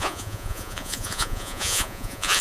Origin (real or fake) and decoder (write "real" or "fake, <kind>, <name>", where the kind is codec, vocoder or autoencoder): fake, vocoder, Vocos